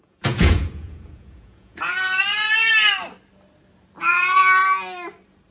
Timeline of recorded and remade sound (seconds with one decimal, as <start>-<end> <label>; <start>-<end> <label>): 0.0-2.7 remade; 2.7-4.0 recorded; 4.0-4.6 remade; 4.6-5.5 recorded